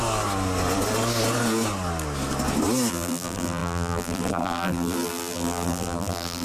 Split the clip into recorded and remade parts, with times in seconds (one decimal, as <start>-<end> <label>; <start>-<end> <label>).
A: 0.0-2.9 recorded; 2.9-6.4 remade